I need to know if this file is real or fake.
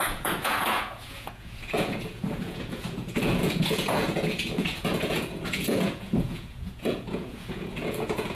fake